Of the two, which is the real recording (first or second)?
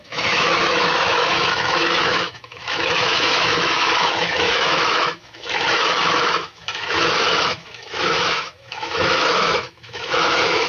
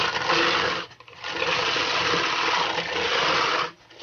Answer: second